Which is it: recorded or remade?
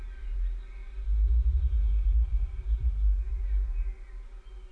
recorded